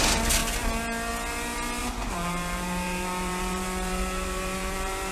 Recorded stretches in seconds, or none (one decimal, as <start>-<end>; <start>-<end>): 0.0-1.8